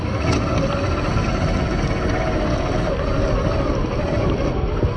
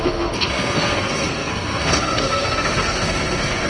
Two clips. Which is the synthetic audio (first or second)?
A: second